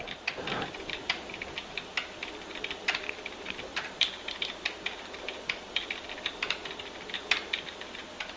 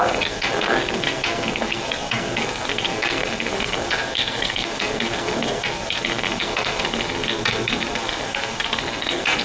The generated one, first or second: second